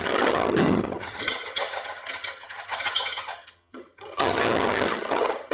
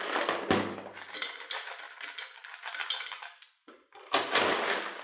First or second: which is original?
second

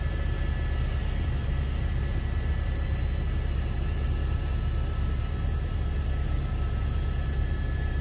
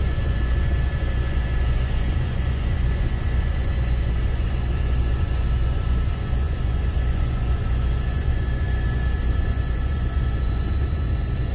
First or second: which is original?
first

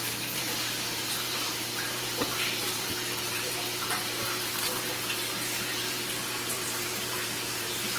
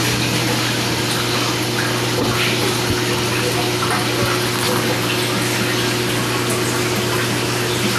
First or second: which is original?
second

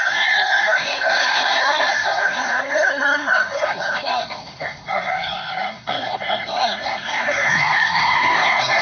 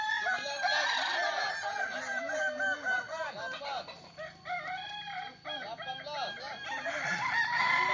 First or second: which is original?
second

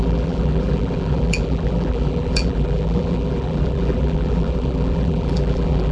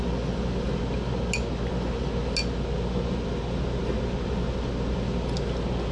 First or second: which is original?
second